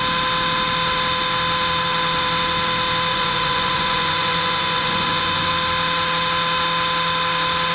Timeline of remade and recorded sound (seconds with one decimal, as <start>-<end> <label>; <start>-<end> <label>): 0.0-3.1 recorded; 3.1-5.5 remade; 5.5-7.7 recorded